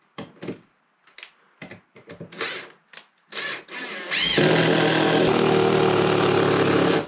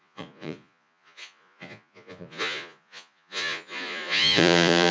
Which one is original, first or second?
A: first